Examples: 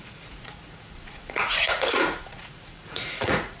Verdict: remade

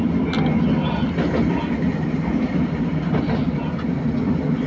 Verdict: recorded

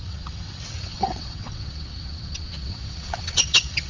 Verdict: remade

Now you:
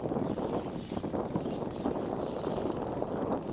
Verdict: recorded